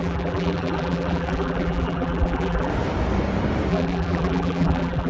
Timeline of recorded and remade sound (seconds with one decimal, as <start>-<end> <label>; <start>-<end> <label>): 0.0-2.7 remade; 2.7-3.7 recorded; 3.7-5.1 remade